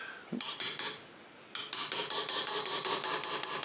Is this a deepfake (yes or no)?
no